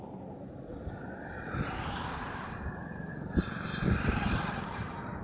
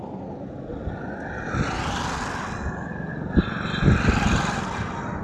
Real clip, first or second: second